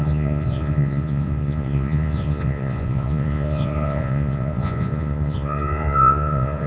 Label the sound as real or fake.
fake